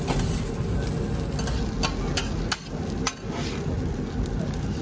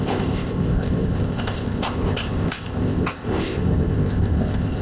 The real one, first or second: first